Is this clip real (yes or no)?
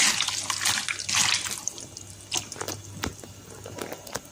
yes